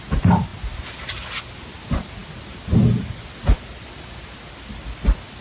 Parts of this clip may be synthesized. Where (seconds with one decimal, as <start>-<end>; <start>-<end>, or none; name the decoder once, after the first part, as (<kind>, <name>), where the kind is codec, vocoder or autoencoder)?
none

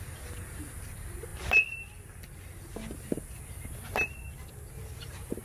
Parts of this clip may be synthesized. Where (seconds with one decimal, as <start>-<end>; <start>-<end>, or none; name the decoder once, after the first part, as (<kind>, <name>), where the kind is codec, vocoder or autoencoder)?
none

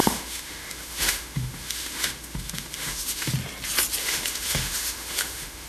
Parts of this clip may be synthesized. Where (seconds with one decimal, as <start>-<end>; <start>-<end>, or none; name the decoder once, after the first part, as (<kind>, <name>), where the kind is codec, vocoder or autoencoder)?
0.0-3.3 (autoencoder, DAC-VAE); 4.0-5.7

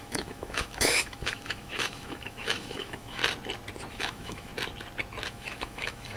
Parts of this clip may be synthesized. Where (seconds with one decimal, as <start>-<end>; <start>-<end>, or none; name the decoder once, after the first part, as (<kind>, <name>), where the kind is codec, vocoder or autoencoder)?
0.0-3.2 (autoencoder, DAC-VAE); 3.9-4.5; 5.3-6.2

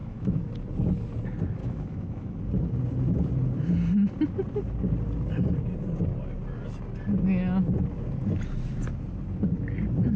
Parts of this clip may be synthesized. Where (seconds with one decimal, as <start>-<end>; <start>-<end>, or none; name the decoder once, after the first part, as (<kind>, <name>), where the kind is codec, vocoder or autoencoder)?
0.0-0.5 (autoencoder, DAC-VAE); 1.6-2.4